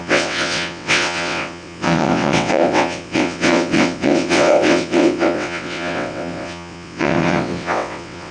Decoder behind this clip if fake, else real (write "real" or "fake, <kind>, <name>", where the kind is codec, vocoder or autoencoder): fake, vocoder, WaveNeXt